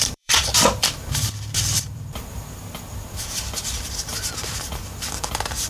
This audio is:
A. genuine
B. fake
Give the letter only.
B